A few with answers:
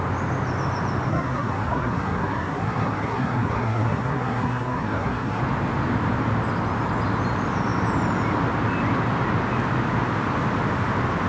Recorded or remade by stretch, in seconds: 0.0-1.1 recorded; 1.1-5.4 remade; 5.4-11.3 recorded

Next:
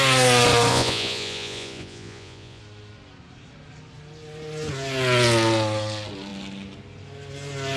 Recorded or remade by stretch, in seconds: 0.0-0.7 recorded; 0.7-2.6 remade; 2.6-7.8 recorded